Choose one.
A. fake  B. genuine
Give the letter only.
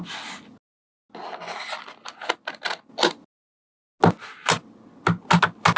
B